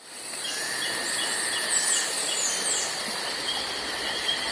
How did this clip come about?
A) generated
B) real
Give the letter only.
B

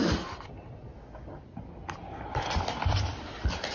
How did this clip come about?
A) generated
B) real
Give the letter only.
B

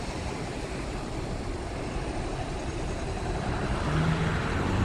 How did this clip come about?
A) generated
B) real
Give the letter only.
A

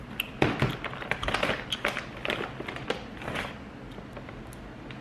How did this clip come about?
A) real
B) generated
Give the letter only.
A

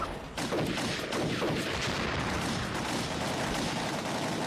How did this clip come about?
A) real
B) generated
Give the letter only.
A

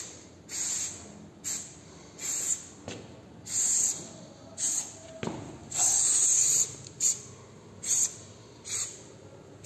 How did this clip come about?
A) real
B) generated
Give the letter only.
A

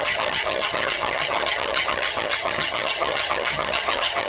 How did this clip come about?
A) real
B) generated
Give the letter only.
B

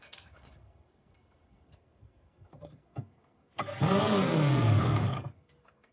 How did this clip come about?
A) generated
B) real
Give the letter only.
A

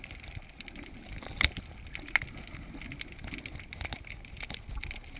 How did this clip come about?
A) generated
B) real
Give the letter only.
B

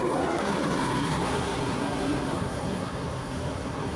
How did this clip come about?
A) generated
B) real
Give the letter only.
A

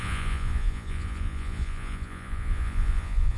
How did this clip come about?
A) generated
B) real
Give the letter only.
A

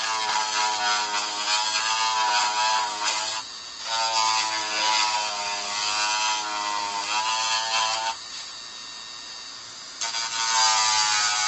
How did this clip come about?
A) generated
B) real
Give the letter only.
B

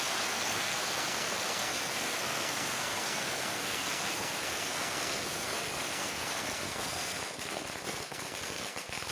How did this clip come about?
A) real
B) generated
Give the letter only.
B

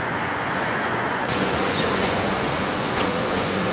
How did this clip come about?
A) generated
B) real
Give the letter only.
A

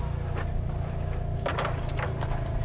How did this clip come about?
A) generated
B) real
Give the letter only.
B